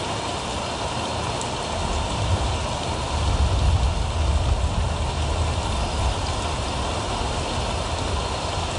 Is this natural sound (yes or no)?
yes